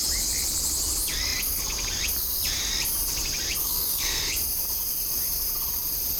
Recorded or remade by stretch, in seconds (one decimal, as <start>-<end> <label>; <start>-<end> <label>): 0.0-3.6 recorded; 3.6-4.3 remade; 4.3-6.2 recorded